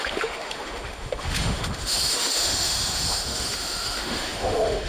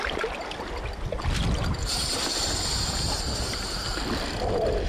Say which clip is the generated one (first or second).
first